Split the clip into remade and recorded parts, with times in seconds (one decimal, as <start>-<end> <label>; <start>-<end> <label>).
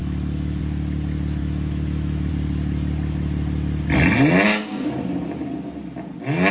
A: 0.0-0.6 remade; 0.6-1.4 recorded; 1.4-2.3 remade; 2.3-6.5 recorded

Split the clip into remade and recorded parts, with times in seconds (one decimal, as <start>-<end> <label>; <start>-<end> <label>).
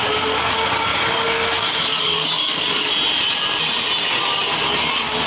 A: 0.0-0.9 recorded; 0.9-2.9 remade; 2.9-5.3 recorded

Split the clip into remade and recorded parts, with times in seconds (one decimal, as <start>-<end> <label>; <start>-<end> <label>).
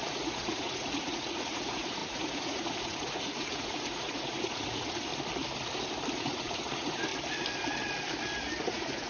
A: 0.0-5.1 remade; 5.1-6.2 recorded; 6.2-7.1 remade; 7.1-8.6 recorded; 8.6-9.1 remade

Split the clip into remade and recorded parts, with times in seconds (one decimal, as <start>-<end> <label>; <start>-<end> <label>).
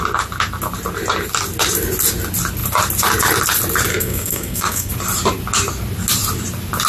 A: 0.0-3.9 recorded; 3.9-4.9 remade; 4.9-6.9 recorded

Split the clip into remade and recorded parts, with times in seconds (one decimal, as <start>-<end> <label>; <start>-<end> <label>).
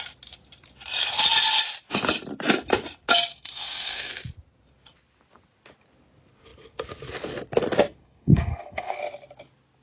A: 0.0-3.3 recorded; 3.3-4.1 remade; 4.1-8.0 recorded; 8.0-9.0 remade; 9.0-9.8 recorded